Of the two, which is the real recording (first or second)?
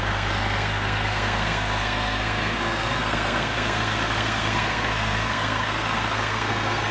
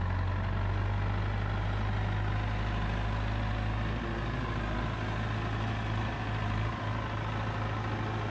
second